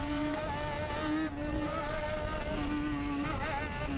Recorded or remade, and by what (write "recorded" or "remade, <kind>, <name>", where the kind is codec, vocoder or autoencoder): recorded